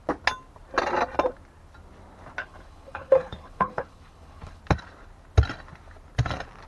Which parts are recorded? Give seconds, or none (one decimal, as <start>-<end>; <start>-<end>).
0.0-2.4; 4.6-6.7